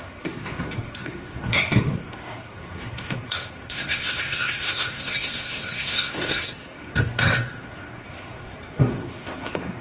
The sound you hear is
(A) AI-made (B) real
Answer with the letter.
A